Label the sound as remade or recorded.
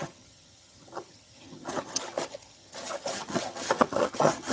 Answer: remade